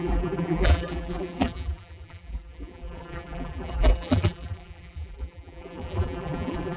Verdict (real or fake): fake